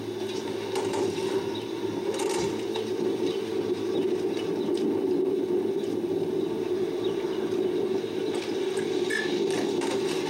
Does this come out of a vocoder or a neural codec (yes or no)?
no